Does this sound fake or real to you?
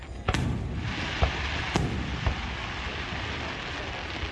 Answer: real